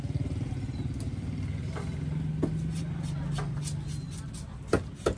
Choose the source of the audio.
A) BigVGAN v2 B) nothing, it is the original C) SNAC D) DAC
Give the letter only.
B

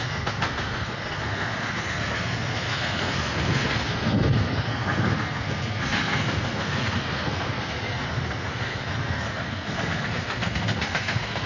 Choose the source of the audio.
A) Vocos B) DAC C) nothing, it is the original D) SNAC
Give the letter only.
D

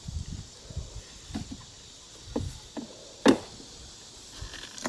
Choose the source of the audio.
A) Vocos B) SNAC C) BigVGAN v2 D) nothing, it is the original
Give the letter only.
D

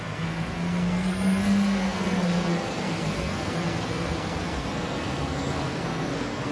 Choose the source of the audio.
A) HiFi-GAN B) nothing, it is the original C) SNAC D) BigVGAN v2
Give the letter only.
C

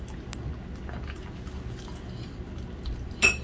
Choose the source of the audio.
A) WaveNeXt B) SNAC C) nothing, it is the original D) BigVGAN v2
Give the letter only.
C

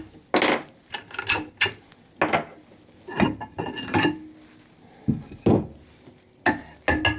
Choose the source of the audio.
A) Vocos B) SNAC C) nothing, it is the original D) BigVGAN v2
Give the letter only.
C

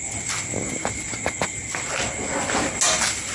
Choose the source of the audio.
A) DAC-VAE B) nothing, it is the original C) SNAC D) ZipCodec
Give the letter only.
B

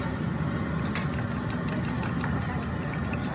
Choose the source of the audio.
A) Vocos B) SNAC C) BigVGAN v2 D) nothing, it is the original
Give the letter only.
D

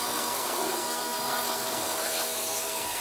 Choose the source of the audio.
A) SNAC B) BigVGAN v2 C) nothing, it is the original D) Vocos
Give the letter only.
A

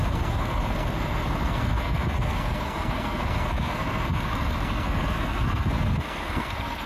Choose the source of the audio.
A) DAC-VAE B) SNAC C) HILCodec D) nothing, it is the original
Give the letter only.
B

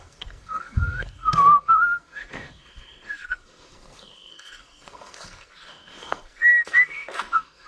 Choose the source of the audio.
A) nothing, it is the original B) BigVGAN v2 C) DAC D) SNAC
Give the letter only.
D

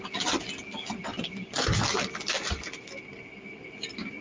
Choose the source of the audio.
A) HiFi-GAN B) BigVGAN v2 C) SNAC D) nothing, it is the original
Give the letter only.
D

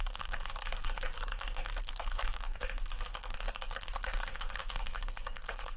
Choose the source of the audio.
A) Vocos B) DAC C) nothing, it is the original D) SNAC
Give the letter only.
D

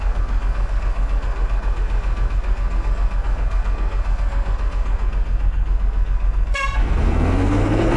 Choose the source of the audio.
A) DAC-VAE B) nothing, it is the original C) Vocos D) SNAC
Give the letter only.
D